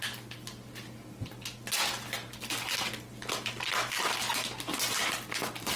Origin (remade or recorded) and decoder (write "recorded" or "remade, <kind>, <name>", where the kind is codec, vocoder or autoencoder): recorded